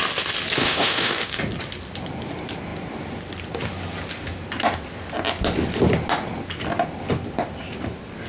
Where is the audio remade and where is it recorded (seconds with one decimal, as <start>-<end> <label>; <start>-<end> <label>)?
0.0-0.6 recorded; 0.6-1.4 remade; 1.4-8.3 recorded